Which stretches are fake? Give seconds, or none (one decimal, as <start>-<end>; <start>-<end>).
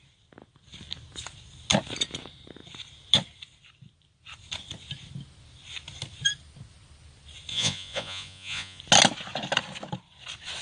7.5-8.8